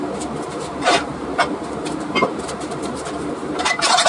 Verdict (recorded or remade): remade